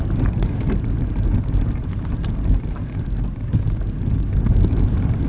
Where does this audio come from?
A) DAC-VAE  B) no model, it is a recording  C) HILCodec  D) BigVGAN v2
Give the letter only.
B